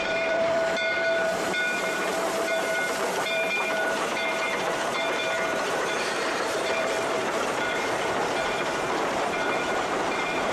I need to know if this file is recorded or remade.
remade